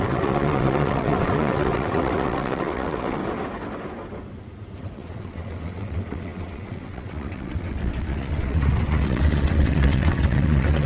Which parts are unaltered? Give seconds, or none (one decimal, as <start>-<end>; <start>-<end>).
3.2-4.8